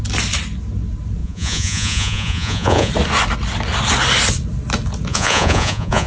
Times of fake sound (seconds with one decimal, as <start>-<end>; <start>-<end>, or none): 1.2-2.9; 5.1-6.1